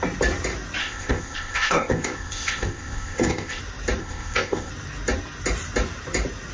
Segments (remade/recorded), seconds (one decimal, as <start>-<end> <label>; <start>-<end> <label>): 0.0-0.8 recorded; 0.8-3.6 remade; 3.6-4.0 recorded; 4.0-4.7 remade; 4.7-6.5 recorded